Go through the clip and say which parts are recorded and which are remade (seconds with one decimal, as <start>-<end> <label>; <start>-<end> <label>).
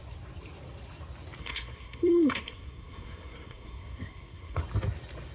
0.0-1.4 recorded; 1.4-4.6 remade; 4.6-5.3 recorded